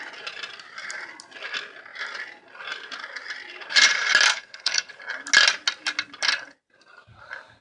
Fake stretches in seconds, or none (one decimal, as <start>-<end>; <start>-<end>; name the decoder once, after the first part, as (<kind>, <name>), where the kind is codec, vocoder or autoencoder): 4.3-4.9 (codec, SNAC)